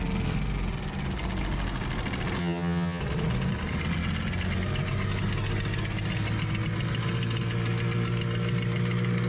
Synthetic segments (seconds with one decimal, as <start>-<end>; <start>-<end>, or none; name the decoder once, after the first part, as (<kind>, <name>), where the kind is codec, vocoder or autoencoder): 2.4-3.0 (vocoder, HiFi-GAN)